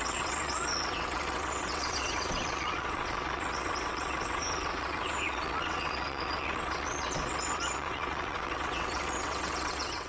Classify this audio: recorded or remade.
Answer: remade